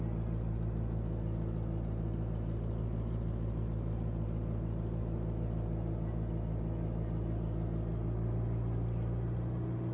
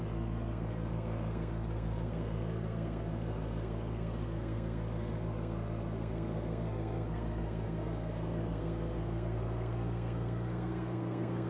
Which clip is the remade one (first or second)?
second